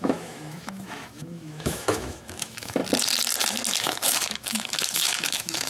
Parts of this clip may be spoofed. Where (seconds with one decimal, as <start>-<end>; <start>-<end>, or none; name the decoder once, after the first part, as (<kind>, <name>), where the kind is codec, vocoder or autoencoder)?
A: 0.0-2.8 (autoencoder, DAC-VAE); 3.8-5.7